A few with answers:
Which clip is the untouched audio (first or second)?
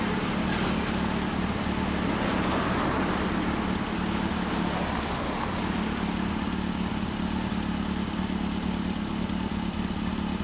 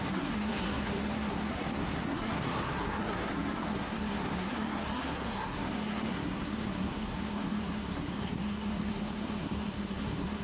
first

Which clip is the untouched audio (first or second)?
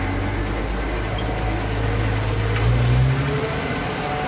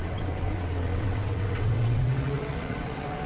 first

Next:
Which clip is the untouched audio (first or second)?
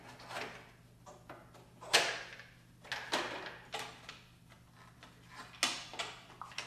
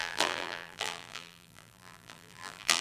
first